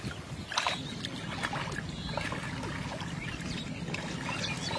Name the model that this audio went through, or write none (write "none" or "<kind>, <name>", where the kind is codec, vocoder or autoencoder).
none